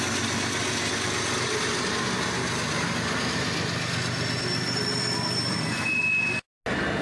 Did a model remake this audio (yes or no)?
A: no